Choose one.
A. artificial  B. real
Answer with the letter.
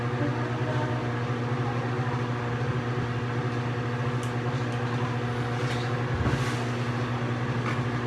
B